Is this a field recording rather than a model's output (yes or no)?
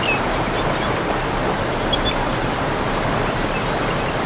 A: yes